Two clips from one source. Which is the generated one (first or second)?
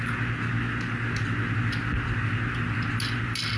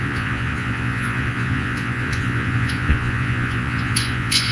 second